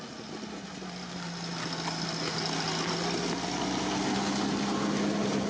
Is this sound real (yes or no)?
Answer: yes